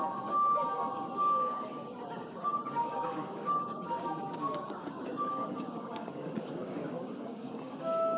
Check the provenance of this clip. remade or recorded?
remade